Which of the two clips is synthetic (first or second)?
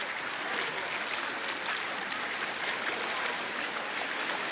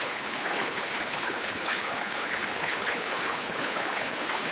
second